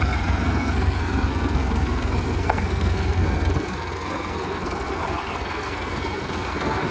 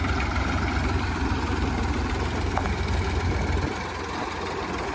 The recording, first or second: second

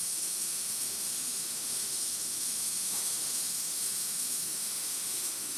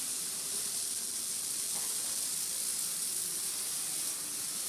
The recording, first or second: second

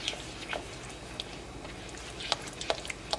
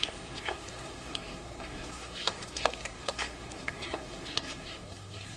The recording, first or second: first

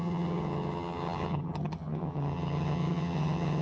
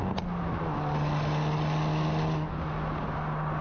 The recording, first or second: second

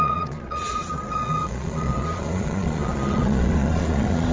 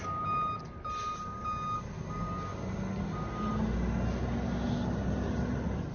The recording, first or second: second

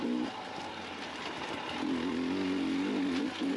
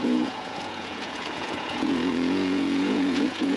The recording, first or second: first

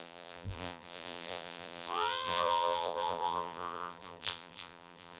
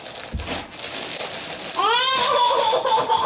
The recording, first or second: second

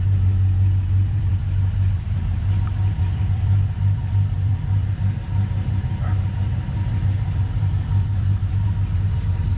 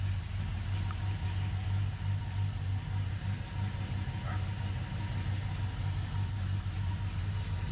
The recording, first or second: second